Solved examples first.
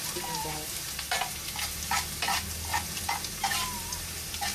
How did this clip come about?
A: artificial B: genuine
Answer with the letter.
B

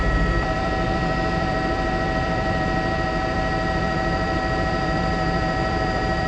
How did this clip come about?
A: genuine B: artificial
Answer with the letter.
B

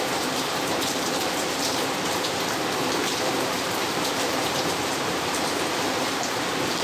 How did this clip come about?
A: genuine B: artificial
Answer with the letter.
B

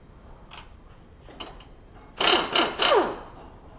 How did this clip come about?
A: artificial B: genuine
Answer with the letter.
B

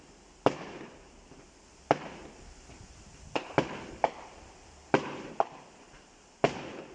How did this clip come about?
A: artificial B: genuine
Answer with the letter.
A